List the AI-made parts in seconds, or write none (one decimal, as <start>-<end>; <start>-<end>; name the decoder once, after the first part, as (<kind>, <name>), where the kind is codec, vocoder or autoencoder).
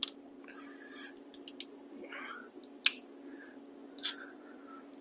3.8-4.6 (vocoder, Vocos)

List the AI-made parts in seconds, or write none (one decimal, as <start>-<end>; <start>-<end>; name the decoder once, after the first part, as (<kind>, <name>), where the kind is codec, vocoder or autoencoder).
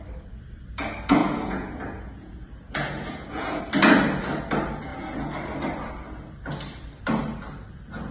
1.2-3.6 (vocoder, Vocos)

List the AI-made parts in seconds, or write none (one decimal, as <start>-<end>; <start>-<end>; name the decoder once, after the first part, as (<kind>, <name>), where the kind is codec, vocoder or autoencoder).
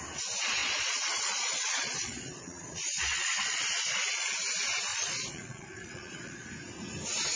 0.6-3.6 (vocoder, Vocos); 4.9-6.4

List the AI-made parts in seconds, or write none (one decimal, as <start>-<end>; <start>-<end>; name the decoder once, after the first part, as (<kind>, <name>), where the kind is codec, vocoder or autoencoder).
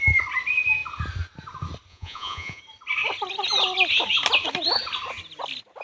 1.9-2.6 (vocoder, Vocos)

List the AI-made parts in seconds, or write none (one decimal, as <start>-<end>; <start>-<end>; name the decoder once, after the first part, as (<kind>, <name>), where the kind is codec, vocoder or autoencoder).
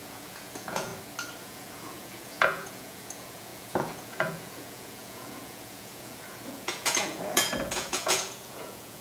0.0-0.9 (vocoder, Vocos); 1.4-9.0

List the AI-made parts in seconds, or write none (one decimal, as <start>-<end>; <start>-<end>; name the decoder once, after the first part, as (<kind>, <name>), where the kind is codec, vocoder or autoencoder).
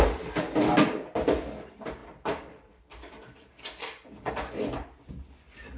none